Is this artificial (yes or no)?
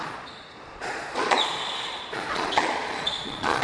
yes